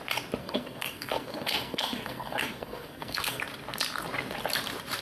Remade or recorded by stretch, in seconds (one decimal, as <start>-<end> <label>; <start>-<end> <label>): 0.0-0.4 recorded; 0.4-3.4 remade; 3.4-5.0 recorded